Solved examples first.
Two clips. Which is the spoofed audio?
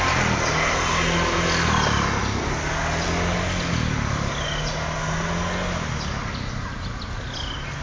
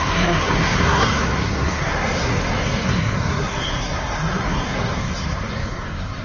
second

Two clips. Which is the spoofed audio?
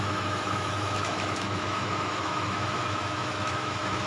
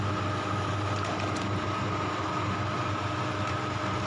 first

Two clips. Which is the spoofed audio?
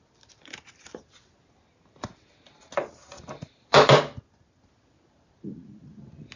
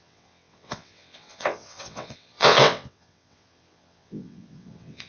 second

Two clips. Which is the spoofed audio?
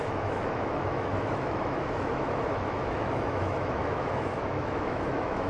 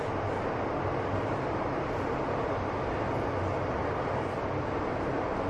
first